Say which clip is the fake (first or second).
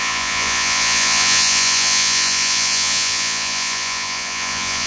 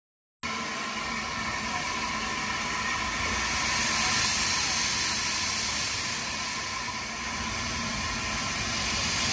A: first